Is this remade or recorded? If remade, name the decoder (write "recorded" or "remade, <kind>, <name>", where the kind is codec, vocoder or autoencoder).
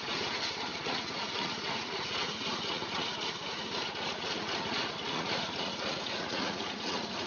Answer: remade, vocoder, Vocos